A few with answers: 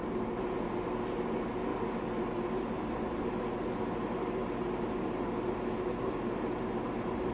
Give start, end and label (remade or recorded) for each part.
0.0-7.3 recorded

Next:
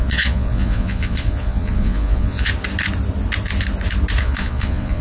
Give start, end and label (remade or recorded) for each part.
0.0-2.5 remade; 2.5-4.2 recorded; 4.2-5.0 remade